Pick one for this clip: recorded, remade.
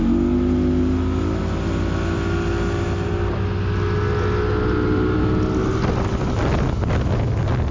recorded